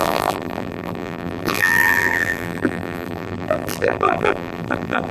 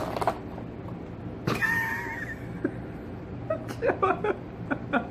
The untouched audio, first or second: second